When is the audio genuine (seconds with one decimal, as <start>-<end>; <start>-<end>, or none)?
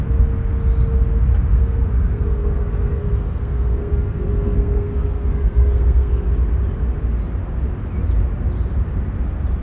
0.0-1.5; 6.3-9.6